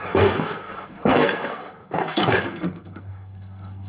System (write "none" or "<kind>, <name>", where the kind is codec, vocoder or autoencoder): codec, SNAC